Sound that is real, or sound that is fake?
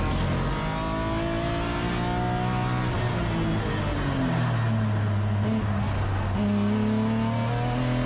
real